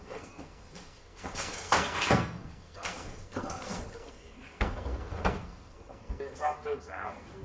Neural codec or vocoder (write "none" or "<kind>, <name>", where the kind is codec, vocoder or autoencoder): codec, SNAC